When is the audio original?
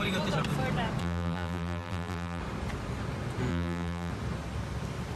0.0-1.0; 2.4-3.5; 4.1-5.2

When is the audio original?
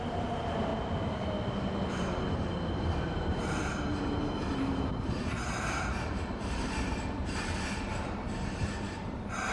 0.7-1.9